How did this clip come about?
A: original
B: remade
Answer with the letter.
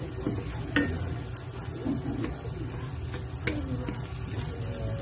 A